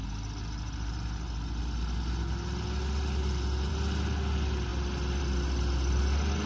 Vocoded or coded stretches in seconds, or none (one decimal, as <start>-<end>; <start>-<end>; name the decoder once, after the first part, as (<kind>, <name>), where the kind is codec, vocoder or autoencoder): none